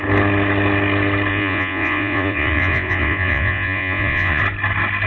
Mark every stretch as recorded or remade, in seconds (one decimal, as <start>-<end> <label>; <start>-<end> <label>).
0.0-1.3 recorded; 1.3-4.4 remade; 4.4-5.1 recorded